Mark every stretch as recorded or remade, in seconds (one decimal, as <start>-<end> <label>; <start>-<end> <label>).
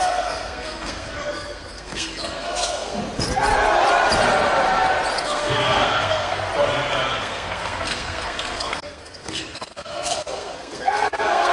0.0-3.0 remade; 3.0-5.2 recorded; 5.2-6.5 remade; 6.5-7.2 recorded; 7.2-11.5 remade